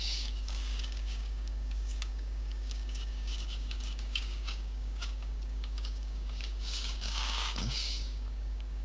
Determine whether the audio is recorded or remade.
remade